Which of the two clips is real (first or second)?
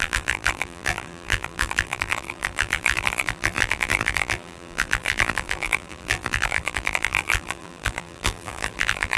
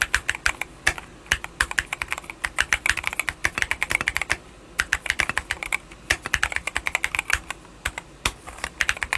second